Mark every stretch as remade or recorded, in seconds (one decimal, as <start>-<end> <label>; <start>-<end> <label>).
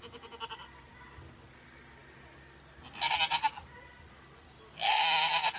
0.0-5.6 recorded